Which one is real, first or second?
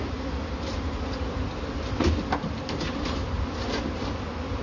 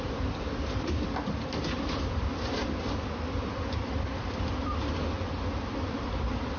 first